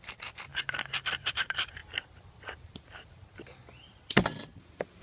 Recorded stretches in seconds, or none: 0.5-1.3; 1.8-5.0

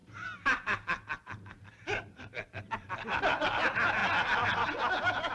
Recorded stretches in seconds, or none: 4.0-5.3

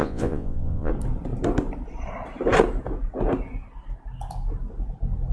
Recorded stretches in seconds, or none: 0.9-5.3

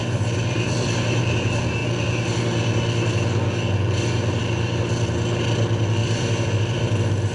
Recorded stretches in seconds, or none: 1.2-6.0

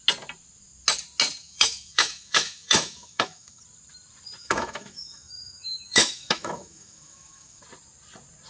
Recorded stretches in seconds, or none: 0.0-1.4; 3.6-4.4; 7.6-8.5

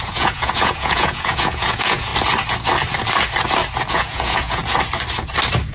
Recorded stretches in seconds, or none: 2.1-3.9; 4.6-5.7